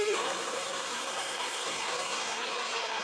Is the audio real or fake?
fake